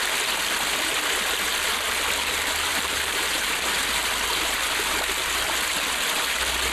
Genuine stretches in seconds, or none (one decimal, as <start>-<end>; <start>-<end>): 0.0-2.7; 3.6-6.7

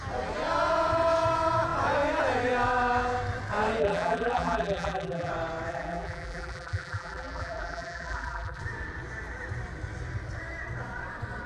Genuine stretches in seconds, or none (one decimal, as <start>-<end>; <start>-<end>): 0.0-3.8; 5.3-5.7; 8.6-11.5

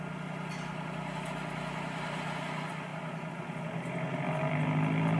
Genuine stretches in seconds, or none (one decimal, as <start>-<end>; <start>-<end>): 0.0-5.2

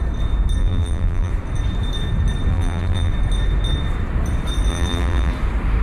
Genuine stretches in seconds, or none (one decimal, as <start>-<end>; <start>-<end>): 0.0-0.6; 1.3-2.5; 3.1-4.7; 5.3-5.8

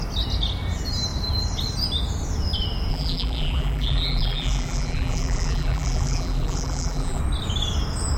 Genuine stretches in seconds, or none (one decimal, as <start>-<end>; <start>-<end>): 0.0-2.9; 7.2-8.2

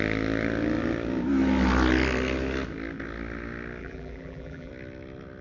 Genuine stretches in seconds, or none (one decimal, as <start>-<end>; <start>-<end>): 0.0-3.8; 4.7-5.4

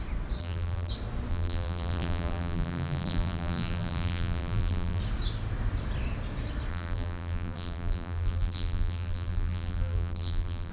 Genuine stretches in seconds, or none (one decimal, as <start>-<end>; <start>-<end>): 0.0-0.4; 0.9-1.3; 5.0-6.7

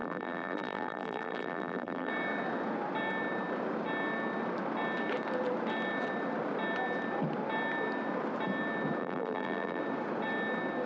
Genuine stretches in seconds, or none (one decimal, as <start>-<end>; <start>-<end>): 2.1-9.0; 9.8-10.9